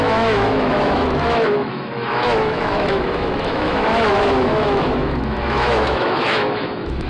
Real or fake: fake